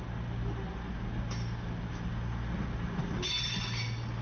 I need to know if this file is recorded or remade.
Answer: recorded